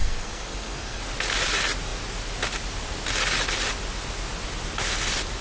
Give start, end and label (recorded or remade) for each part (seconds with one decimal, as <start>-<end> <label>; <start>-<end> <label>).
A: 0.0-1.0 remade; 1.0-5.4 recorded